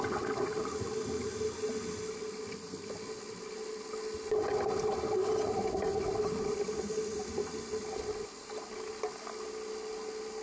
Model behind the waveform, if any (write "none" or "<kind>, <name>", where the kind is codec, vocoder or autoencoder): none